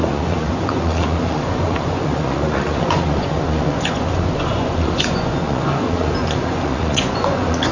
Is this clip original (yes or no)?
no